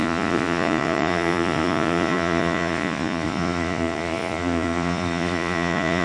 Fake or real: fake